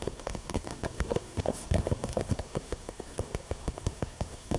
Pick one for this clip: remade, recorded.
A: remade